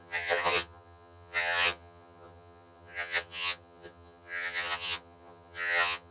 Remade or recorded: remade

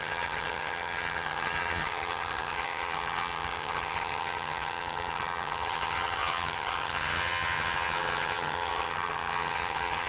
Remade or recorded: remade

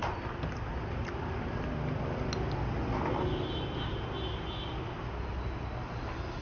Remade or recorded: recorded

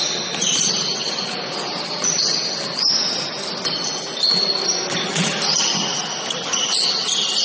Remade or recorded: recorded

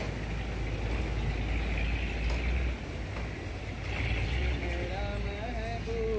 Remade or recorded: recorded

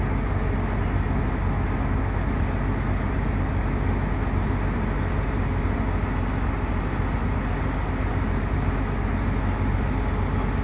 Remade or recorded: recorded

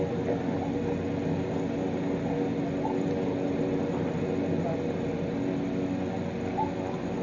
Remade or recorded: recorded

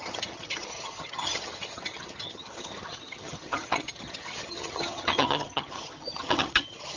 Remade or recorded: remade